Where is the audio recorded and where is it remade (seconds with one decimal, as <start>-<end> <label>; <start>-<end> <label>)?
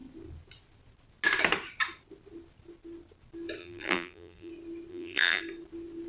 0.0-3.6 recorded; 3.6-4.5 remade; 4.5-4.9 recorded; 4.9-5.4 remade; 5.4-6.1 recorded